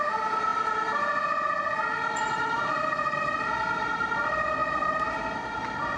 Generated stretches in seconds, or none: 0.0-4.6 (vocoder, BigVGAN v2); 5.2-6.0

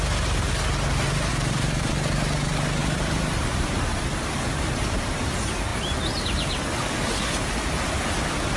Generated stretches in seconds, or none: 1.3-1.9 (vocoder, BigVGAN v2); 2.8-5.3